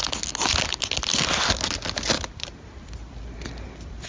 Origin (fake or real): real